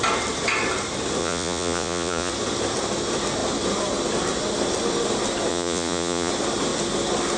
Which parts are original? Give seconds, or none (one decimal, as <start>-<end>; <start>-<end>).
0.0-1.2; 2.3-5.5; 6.3-7.4